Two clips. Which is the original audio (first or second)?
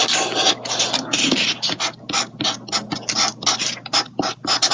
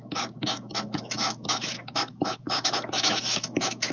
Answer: first